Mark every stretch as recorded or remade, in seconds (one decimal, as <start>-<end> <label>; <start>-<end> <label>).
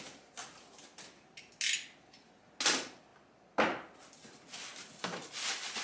0.0-5.8 recorded